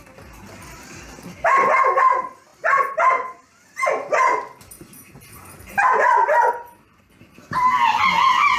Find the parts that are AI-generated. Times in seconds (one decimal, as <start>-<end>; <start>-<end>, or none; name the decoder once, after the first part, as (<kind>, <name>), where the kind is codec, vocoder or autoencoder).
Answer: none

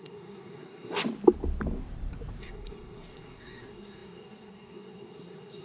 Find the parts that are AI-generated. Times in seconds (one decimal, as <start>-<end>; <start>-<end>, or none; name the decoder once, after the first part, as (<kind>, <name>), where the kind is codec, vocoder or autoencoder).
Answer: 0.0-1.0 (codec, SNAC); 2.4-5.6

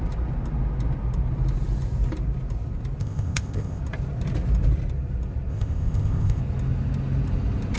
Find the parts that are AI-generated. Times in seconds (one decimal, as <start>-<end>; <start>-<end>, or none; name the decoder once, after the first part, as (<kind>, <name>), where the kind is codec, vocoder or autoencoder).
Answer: 3.0-3.8 (codec, ZipCodec); 5.5-6.4